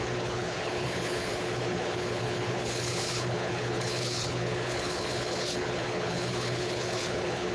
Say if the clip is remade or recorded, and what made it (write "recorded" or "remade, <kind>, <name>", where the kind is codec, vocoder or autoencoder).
remade, codec, HILCodec